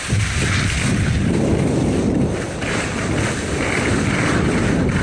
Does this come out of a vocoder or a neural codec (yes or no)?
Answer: yes